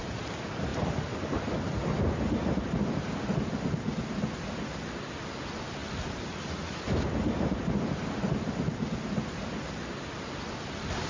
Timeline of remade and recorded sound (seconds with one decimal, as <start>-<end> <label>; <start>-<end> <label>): 0.0-11.1 recorded